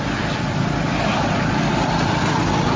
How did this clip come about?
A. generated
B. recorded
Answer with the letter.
B